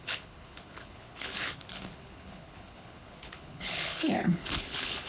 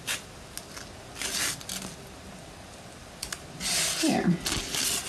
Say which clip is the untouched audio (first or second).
second